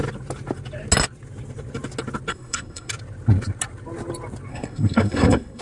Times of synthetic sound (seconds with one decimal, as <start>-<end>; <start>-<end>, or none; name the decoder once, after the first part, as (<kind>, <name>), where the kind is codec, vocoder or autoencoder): 2.3-2.9 (codec, SNAC); 4.5-5.6